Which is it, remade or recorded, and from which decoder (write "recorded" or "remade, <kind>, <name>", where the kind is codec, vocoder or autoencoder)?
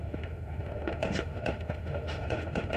remade, autoencoder, DAC-VAE